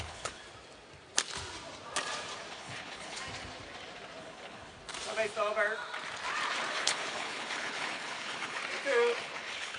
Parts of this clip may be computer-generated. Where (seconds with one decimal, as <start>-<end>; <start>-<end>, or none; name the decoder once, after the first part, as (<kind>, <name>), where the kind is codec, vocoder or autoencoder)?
0.0-0.4 (codec, HILCodec); 2.5-3.2; 4.2-4.8; 6.7-8.6; 9.2-9.8